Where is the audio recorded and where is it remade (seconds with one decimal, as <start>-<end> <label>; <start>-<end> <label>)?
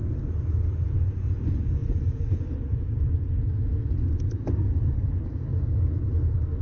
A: 0.0-1.8 recorded; 1.8-3.3 remade; 3.3-5.5 recorded; 5.5-6.1 remade; 6.1-6.6 recorded